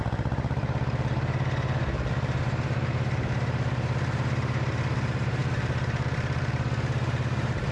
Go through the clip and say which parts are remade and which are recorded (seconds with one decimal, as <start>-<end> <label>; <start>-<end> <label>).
0.0-7.7 remade